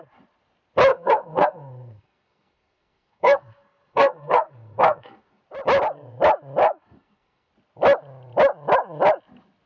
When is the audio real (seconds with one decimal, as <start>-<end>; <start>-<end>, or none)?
0.0-0.9; 5.4-6.6; 7.5-9.7

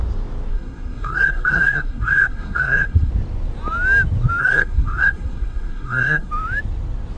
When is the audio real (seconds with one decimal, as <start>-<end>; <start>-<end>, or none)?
0.0-0.5; 3.1-4.4; 6.3-7.2